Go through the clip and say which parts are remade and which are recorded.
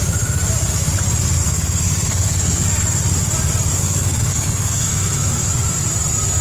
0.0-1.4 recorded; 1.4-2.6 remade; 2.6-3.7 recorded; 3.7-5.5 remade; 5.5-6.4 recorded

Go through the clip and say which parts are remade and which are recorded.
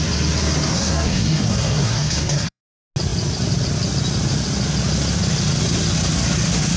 0.0-0.7 recorded; 0.7-2.6 remade; 2.6-6.8 recorded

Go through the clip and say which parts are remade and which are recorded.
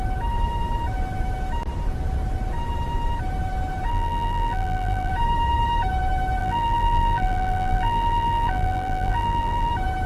0.0-3.9 recorded; 3.9-5.1 remade; 5.1-6.4 recorded; 6.4-9.7 remade; 9.7-10.1 recorded